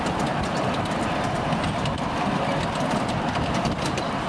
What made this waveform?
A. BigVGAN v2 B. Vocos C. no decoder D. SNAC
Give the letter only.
C